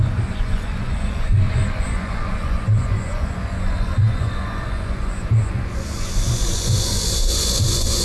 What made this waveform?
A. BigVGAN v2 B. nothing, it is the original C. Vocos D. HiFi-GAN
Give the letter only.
C